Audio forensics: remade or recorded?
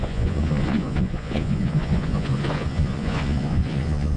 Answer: remade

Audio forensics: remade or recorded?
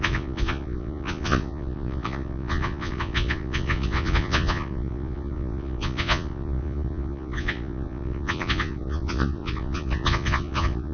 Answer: remade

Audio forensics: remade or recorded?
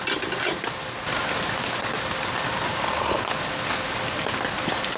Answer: recorded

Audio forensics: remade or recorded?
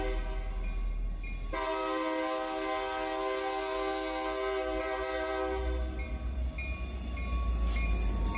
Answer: recorded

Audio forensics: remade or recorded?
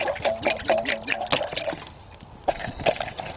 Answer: recorded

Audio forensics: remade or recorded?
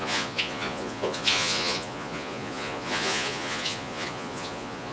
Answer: remade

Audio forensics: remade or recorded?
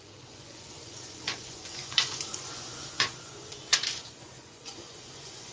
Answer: remade